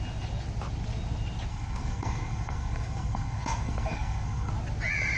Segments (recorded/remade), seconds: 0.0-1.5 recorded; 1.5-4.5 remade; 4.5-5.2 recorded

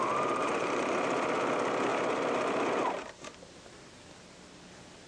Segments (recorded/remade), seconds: 0.0-5.1 recorded

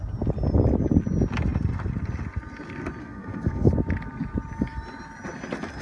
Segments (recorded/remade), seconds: 0.0-3.0 recorded; 3.0-3.7 remade; 3.7-5.8 recorded

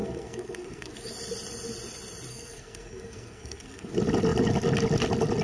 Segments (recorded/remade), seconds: 0.0-0.9 remade; 0.9-2.3 recorded; 2.3-3.9 remade; 3.9-5.4 recorded